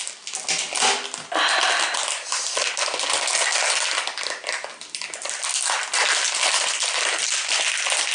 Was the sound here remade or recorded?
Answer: recorded